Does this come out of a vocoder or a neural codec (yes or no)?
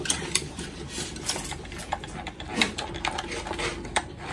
yes